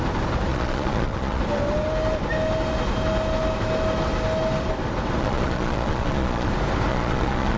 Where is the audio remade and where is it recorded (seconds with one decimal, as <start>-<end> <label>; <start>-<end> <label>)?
0.0-0.5 recorded; 0.5-1.4 remade; 1.4-5.2 recorded; 5.2-6.5 remade; 6.5-6.9 recorded; 6.9-7.6 remade